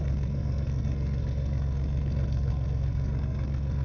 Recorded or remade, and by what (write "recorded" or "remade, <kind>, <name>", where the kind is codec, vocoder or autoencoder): remade, codec, SNAC